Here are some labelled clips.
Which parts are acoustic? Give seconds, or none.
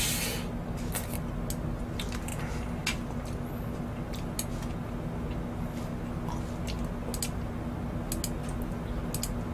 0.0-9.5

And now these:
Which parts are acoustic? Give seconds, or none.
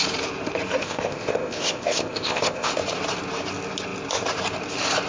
0.0-0.8; 2.7-5.1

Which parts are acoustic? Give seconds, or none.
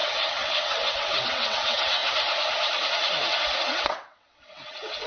2.0-3.6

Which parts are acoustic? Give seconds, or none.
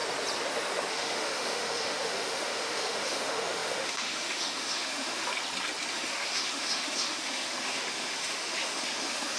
0.0-0.9; 5.3-5.9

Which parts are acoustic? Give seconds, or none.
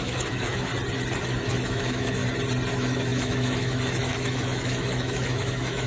0.7-1.2; 2.2-2.7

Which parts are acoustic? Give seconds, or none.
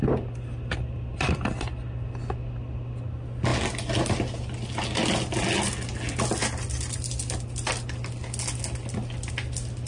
0.0-9.9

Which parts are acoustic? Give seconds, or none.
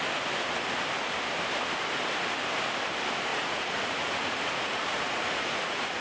0.0-3.3